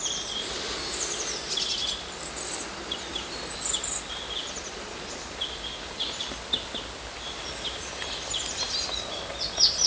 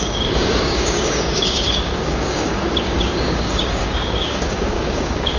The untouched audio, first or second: first